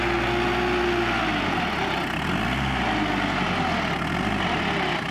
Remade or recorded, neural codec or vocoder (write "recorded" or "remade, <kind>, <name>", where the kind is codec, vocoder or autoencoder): recorded